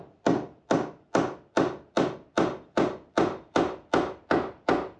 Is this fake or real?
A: real